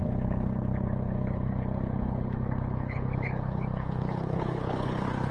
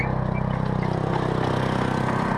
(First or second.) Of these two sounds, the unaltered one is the second